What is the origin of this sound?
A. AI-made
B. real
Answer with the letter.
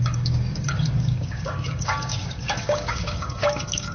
A